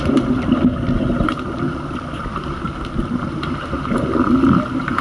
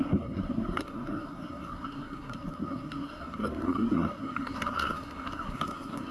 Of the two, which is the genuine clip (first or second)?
first